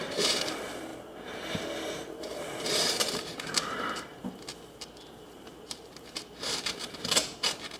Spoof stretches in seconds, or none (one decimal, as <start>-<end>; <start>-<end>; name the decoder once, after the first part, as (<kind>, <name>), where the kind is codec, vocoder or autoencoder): 0.0-4.1 (vocoder, BigVGAN v2); 5.1-7.8